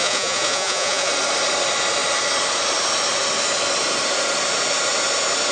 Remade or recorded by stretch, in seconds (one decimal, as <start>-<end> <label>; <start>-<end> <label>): 0.0-1.1 remade; 1.1-5.5 recorded

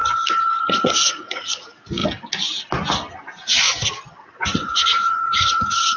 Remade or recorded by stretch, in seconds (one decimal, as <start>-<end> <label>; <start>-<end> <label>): 0.0-0.6 recorded; 0.6-2.0 remade; 2.0-4.3 recorded; 4.3-6.0 remade